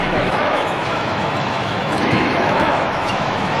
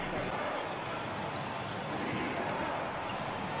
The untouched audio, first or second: second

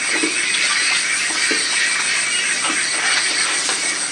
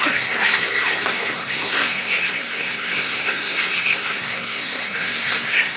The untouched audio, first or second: first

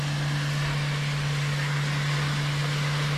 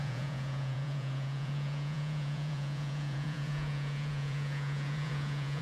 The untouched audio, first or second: first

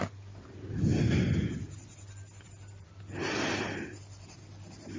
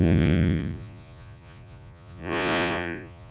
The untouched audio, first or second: first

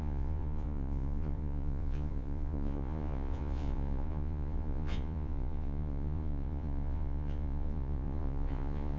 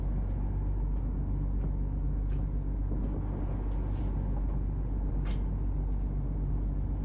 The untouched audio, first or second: second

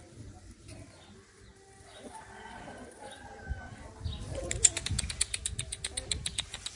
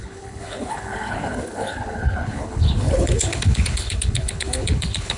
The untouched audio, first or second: first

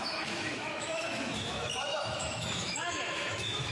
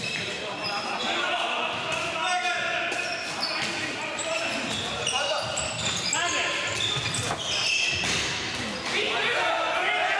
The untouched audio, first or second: second